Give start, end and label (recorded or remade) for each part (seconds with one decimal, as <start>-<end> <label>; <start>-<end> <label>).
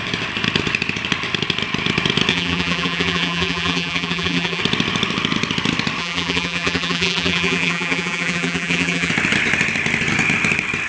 0.0-2.3 recorded; 2.3-4.6 remade; 4.6-6.0 recorded; 6.0-9.1 remade; 9.1-10.9 recorded